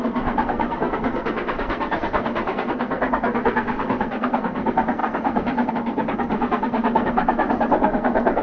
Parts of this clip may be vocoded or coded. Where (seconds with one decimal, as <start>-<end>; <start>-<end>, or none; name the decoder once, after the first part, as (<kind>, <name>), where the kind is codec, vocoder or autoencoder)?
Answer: 0.0-8.4 (codec, SNAC)